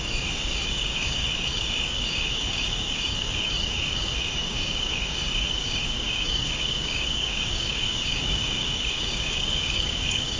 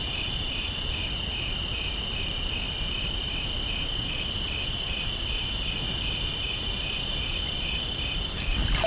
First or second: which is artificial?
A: first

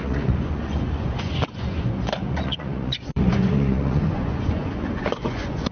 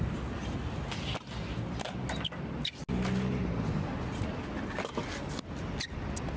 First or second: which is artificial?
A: first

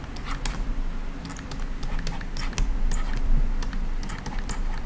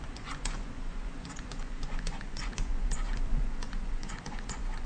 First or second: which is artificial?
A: second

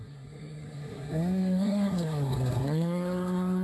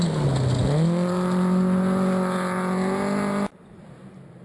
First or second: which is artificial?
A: first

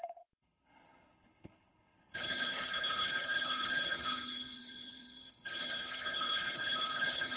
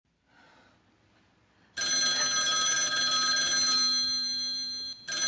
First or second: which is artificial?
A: first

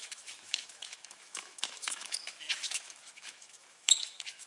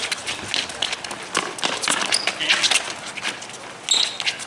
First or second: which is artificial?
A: first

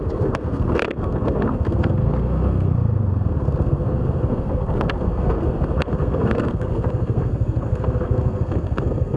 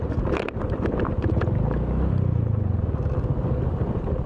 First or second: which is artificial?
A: first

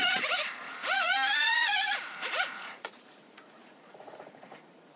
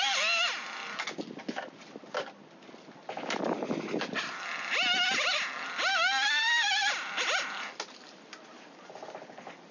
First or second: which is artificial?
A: first